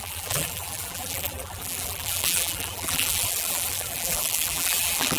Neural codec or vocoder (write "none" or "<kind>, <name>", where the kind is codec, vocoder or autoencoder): vocoder, BigVGAN v2